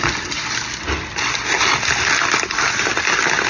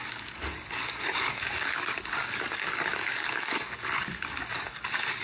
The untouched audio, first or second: first